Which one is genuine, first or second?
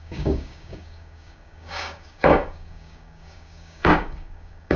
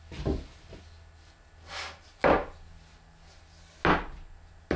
second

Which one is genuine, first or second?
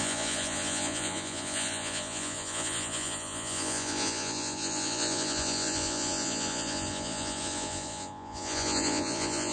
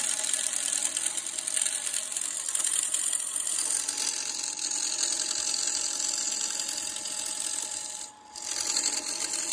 second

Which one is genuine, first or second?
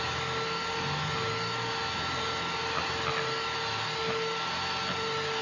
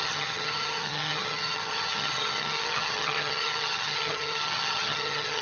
first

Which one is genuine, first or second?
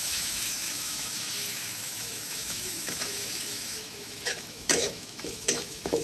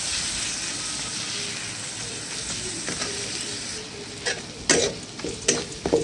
second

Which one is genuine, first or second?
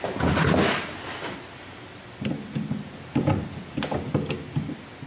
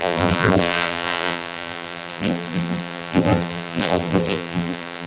first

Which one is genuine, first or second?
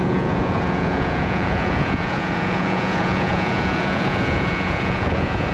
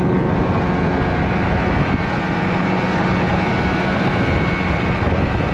second